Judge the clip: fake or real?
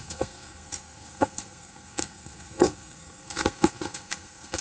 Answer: fake